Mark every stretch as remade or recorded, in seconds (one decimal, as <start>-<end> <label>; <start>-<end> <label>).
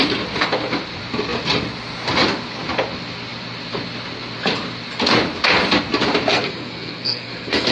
0.0-6.3 recorded; 6.3-7.7 remade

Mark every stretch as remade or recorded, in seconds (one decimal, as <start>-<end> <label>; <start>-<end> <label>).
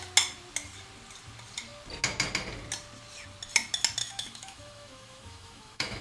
0.0-4.0 recorded; 4.0-6.0 remade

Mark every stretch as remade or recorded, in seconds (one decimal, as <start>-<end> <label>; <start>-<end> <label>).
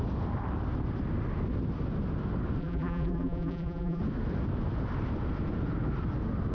0.0-2.6 recorded; 2.6-4.0 remade; 4.0-6.5 recorded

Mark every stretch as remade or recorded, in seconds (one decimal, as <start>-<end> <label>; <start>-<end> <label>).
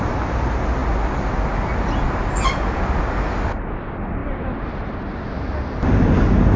0.0-6.6 recorded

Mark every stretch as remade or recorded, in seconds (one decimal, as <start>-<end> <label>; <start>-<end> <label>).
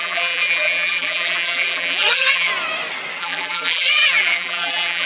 0.0-2.5 remade; 2.5-3.2 recorded; 3.2-5.1 remade